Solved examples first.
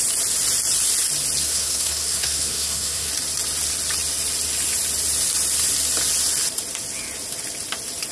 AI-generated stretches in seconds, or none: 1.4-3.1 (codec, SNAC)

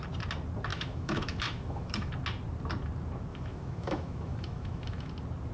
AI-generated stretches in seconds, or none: 0.7-2.1 (autoencoder, DAC-VAE); 3.3-5.1

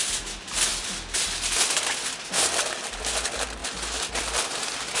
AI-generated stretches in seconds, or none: none